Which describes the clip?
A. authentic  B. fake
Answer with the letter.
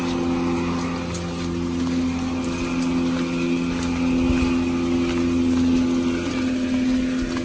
A